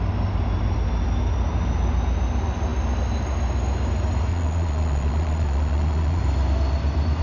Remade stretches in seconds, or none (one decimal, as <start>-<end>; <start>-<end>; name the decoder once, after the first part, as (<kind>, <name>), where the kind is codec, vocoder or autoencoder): 4.3-6.2 (vocoder, Vocos)